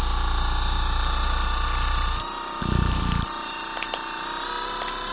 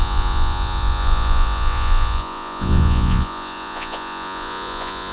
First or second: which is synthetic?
second